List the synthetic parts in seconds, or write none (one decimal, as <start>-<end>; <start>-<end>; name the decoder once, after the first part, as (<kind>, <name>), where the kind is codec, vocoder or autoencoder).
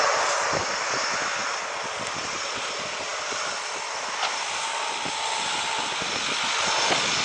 none